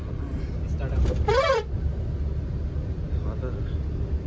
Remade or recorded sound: recorded